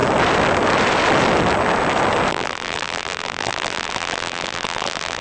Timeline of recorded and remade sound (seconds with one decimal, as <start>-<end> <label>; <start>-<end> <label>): 0.0-2.3 recorded; 2.3-5.2 remade

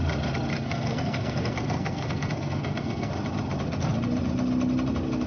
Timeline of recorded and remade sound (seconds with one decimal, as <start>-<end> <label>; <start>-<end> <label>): 0.0-0.5 recorded; 0.5-3.1 remade; 3.1-5.3 recorded

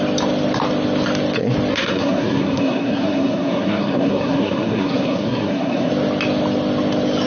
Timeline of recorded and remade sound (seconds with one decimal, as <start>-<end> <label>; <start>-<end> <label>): 0.0-1.7 recorded; 1.7-5.9 remade; 5.9-7.3 recorded